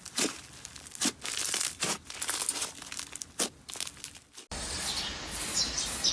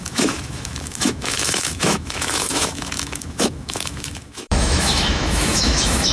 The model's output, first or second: second